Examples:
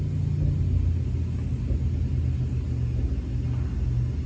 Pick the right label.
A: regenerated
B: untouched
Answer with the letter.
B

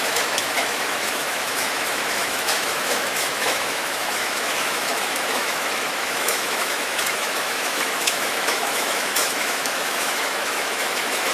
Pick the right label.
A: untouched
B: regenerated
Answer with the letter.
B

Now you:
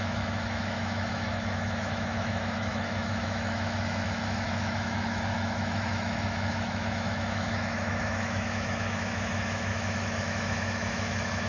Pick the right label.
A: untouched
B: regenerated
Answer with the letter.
B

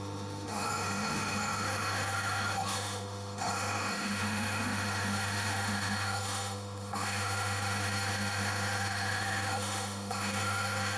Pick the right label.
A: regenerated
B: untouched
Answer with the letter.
A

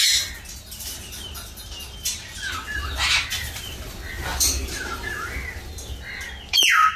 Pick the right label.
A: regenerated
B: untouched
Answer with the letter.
B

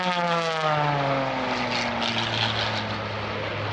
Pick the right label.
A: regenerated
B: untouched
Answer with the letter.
B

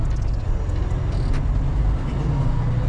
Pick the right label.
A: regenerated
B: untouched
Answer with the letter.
B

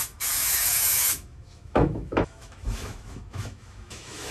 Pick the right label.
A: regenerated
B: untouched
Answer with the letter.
A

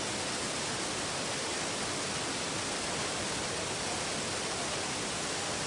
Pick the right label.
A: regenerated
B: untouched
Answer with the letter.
B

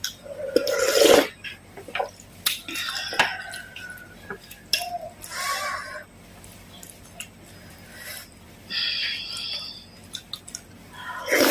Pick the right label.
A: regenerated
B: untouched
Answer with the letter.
B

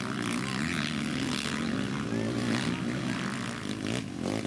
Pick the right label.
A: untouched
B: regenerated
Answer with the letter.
A